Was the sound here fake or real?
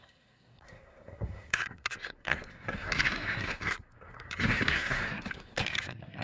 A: fake